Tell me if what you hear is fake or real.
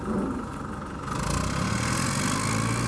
real